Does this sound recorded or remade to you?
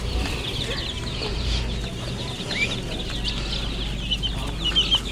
recorded